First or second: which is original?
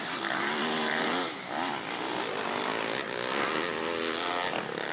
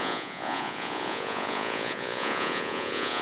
first